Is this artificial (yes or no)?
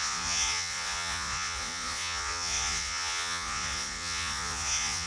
yes